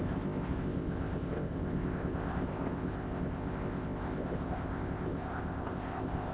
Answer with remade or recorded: remade